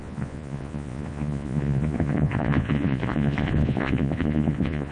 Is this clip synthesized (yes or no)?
yes